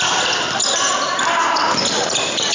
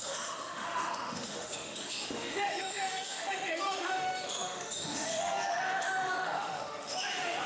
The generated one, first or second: second